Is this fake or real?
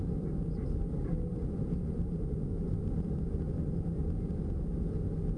real